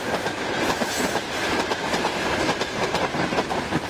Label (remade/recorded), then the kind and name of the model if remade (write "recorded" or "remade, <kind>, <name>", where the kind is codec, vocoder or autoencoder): recorded